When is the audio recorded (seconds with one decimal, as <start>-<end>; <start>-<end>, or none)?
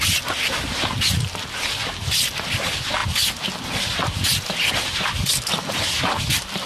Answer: 0.0-6.7